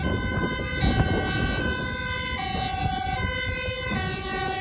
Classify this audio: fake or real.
real